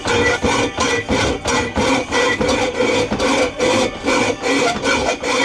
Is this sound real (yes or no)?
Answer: yes